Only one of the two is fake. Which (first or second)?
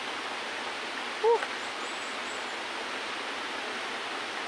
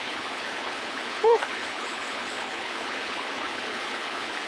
second